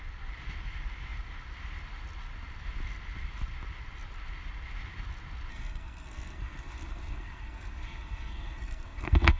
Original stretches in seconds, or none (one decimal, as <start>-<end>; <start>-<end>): 0.0-5.5